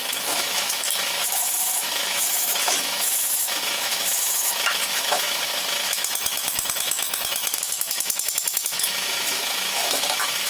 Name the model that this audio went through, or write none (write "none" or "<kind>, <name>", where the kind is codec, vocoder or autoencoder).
autoencoder, DAC-VAE